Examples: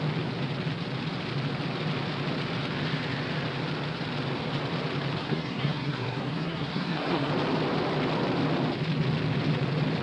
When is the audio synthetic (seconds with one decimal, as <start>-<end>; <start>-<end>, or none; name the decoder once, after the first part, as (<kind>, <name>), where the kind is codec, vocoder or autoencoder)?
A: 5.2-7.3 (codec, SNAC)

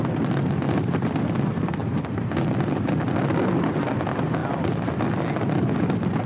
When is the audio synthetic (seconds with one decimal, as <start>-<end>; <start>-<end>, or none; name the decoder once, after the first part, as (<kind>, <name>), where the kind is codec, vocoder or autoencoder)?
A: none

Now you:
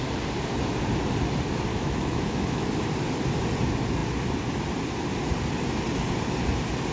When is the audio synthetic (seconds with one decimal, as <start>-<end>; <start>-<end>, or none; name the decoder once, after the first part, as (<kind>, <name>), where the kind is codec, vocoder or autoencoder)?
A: 1.7-2.7 (autoencoder, DAC-VAE)